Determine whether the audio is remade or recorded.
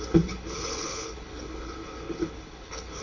remade